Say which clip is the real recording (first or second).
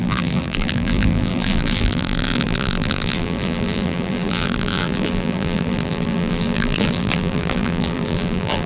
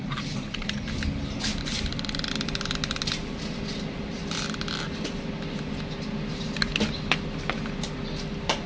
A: second